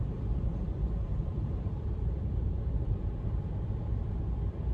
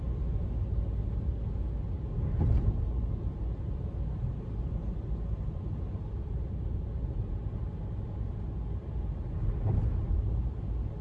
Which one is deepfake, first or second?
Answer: first